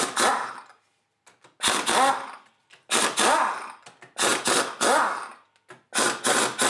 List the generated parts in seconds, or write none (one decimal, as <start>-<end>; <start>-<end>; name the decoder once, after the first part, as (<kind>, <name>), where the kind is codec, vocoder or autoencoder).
none